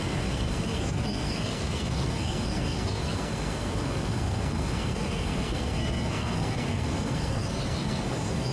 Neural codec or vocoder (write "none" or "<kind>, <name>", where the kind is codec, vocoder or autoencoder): codec, SNAC